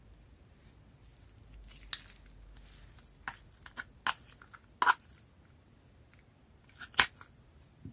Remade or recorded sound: recorded